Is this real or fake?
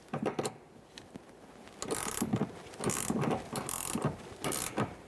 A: real